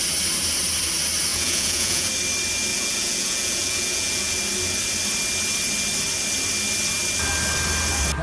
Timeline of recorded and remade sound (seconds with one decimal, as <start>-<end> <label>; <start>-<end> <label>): 0.0-1.3 recorded; 1.3-2.1 remade; 2.1-2.7 recorded; 2.7-4.4 remade; 4.4-8.2 recorded